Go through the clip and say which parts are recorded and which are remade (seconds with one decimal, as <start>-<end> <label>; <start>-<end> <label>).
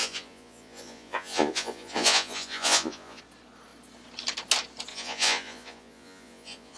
0.0-3.2 remade; 3.2-4.9 recorded; 4.9-6.8 remade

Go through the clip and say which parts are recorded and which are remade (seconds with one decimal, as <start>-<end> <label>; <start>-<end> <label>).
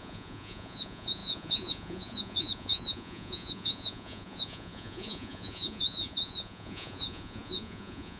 0.0-8.2 remade